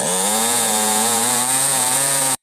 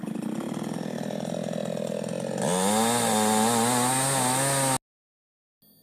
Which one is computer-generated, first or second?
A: first